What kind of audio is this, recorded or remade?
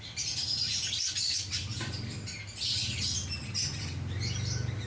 recorded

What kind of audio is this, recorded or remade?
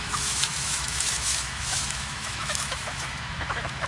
remade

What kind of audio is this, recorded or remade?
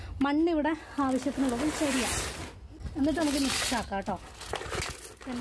recorded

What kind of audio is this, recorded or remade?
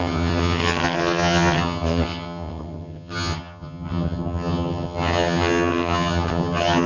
remade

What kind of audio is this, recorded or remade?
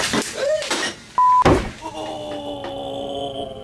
recorded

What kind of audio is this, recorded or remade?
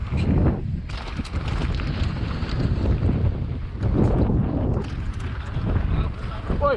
recorded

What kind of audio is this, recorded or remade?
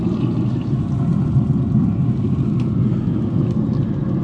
recorded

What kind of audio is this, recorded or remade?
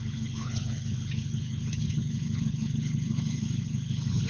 remade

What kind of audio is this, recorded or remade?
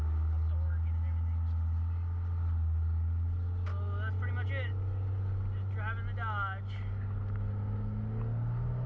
recorded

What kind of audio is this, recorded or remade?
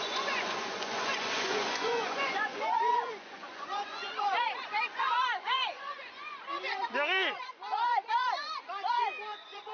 remade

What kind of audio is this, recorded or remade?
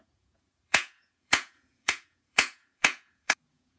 remade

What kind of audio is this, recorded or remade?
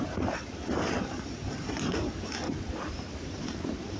remade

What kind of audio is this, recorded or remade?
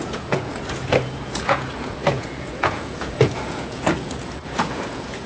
remade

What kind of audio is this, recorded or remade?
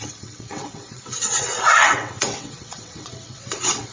remade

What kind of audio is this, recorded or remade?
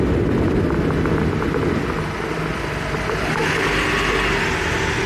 recorded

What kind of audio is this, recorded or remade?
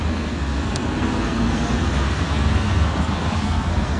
remade